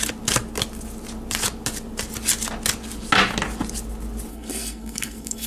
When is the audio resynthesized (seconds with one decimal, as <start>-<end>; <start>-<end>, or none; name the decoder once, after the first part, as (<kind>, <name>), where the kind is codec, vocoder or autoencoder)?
4.3-5.5 (codec, SNAC)